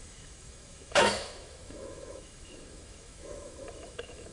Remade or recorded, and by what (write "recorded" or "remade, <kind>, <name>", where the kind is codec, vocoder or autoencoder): remade, autoencoder, DAC-VAE